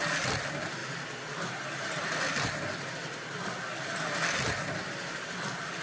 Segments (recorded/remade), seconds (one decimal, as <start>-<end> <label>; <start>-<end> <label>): 0.0-5.8 recorded